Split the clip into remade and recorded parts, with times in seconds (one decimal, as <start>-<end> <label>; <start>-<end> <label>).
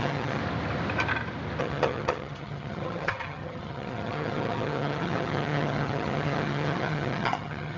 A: 0.0-0.4 remade; 0.4-1.6 recorded; 1.6-7.8 remade